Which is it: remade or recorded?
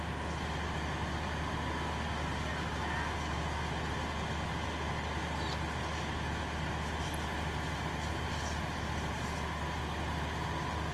recorded